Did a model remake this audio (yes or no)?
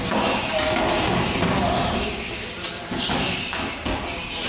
no